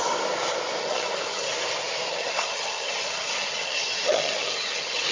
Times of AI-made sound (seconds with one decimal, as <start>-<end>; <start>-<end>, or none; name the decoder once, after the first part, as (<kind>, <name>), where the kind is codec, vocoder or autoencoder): 0.8-1.5 (vocoder, HiFi-GAN); 2.1-5.1